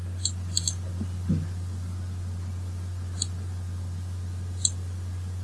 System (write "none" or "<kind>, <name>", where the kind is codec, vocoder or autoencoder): none